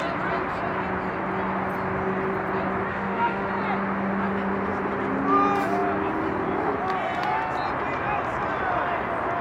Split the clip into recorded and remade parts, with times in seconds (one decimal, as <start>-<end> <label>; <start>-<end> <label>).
0.0-2.9 recorded; 2.9-3.5 remade; 3.5-9.4 recorded